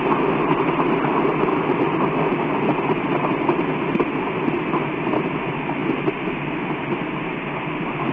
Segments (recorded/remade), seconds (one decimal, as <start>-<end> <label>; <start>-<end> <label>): 0.0-1.3 recorded; 1.3-5.0 remade; 5.0-8.1 recorded